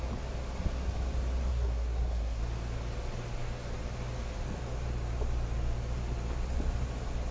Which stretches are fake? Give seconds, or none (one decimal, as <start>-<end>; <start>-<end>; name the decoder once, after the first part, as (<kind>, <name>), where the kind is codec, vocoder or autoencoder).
1.5-2.4 (codec, SNAC)